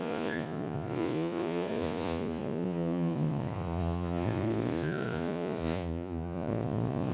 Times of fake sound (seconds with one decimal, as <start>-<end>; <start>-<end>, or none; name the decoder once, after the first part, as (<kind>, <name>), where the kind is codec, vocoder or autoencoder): 0.0-7.1 (vocoder, Vocos)